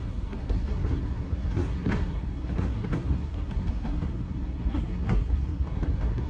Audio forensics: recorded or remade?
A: remade